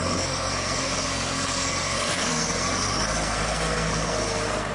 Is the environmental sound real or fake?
fake